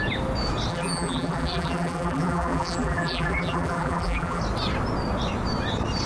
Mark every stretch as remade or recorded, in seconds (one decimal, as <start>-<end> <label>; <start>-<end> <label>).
0.0-0.7 recorded; 0.7-4.4 remade; 4.4-6.1 recorded